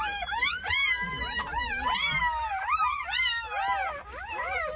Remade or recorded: recorded